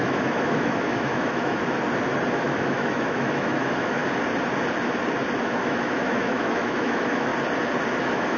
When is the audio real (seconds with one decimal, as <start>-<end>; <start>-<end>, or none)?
1.6-2.3; 4.0-5.4; 7.3-8.0